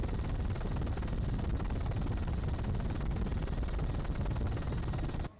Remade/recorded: recorded